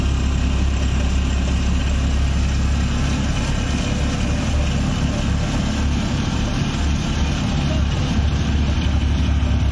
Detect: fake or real real